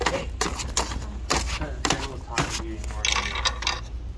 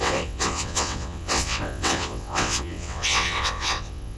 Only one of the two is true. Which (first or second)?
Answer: first